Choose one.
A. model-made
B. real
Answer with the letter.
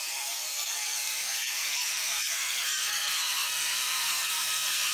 A